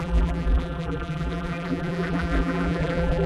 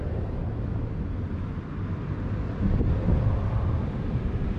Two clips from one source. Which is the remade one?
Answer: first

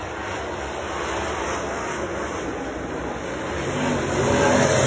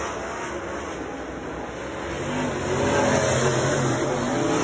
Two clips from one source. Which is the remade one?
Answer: first